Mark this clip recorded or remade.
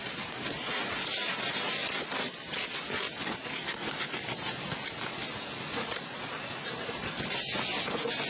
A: recorded